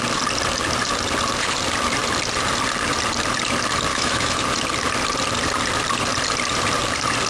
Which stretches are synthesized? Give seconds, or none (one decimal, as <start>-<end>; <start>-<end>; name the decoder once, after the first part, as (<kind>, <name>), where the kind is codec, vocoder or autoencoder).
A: 3.9-4.4 (autoencoder, DAC-VAE)